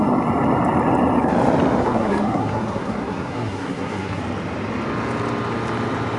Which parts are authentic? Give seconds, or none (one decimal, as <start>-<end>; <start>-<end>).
0.0-1.8; 4.2-6.2